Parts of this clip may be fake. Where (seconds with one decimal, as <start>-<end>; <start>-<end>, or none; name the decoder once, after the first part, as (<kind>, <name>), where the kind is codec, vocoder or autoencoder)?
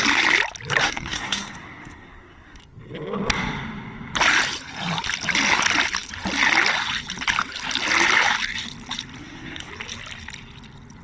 0.8-2.6 (codec, SNAC); 9.2-9.7